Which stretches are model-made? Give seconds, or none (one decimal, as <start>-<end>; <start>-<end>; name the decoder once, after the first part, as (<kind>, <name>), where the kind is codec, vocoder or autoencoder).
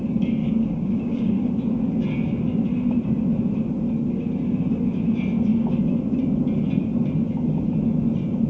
0.4-1.4 (codec, DAC)